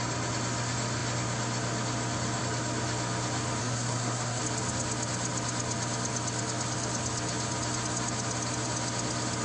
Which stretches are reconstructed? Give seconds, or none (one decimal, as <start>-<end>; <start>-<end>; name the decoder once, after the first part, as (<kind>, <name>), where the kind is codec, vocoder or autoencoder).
3.6-4.4 (codec, SNAC)